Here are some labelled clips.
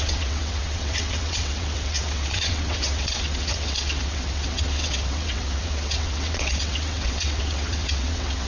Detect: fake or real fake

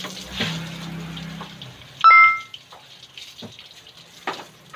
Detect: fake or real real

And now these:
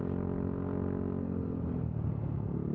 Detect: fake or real real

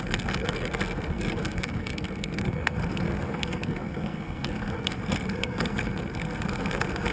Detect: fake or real fake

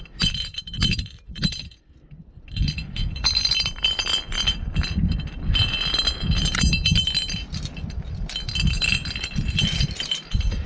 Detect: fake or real real